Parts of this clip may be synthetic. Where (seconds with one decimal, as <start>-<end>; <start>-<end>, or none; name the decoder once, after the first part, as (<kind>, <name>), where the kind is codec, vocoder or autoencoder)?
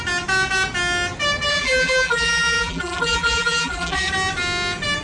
1.5-4.1 (vocoder, BigVGAN v2)